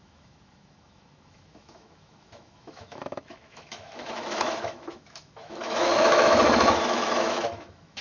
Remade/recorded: remade